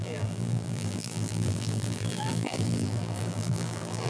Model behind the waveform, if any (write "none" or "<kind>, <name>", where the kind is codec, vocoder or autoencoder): vocoder, BigVGAN v2